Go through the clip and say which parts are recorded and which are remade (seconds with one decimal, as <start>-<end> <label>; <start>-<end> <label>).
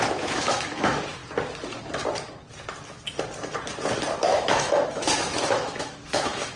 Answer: 0.0-1.2 remade; 1.2-4.3 recorded; 4.3-6.6 remade